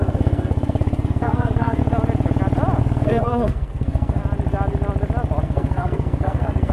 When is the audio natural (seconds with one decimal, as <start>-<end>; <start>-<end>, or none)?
1.8-2.8; 4.2-5.4